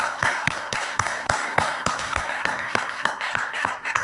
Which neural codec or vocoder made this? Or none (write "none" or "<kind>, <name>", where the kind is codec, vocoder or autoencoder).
codec, SNAC